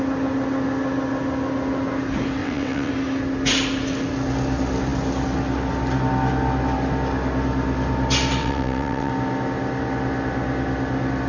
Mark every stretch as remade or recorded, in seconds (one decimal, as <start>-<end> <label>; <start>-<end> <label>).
0.0-2.4 recorded; 2.4-2.9 remade; 2.9-8.4 recorded; 8.4-9.1 remade; 9.1-11.3 recorded

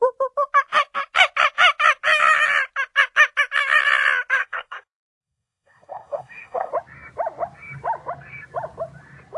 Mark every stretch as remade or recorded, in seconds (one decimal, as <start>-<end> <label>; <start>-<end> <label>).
0.0-4.4 recorded; 4.4-6.7 remade; 6.7-9.4 recorded

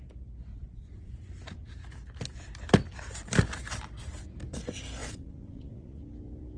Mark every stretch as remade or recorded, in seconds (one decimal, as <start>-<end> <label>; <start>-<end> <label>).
0.0-0.5 recorded; 0.5-1.1 remade; 1.1-5.0 recorded; 5.0-6.0 remade; 6.0-6.6 recorded